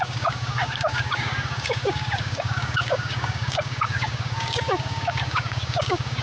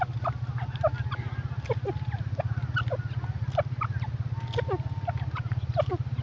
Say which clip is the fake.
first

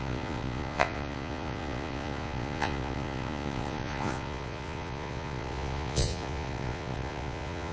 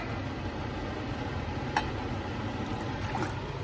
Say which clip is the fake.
first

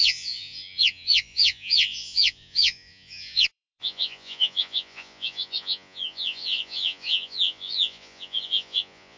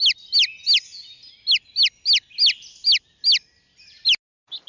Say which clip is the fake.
first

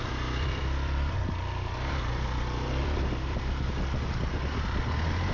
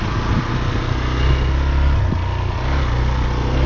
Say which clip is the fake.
first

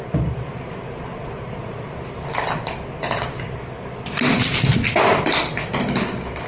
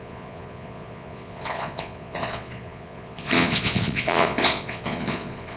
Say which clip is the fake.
second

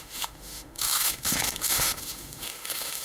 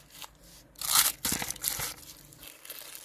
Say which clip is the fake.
first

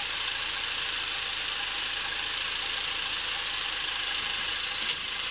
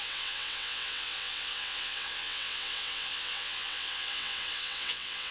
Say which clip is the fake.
second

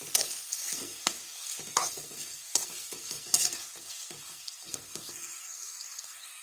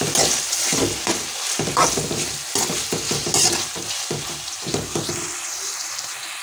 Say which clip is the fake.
first